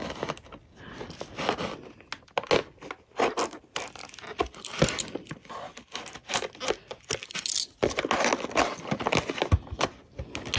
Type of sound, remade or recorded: recorded